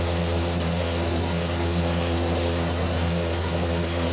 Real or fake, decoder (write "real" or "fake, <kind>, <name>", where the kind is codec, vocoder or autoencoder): fake, codec, SNAC